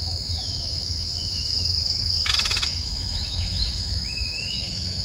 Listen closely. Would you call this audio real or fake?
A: fake